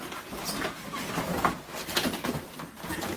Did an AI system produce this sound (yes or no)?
no